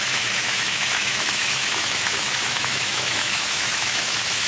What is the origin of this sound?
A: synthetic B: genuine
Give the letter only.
A